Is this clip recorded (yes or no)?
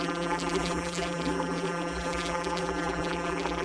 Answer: no